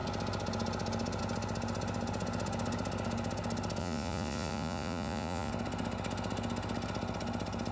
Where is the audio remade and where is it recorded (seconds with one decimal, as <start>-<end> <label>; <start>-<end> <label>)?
0.0-3.8 recorded; 3.8-5.5 remade; 5.5-7.7 recorded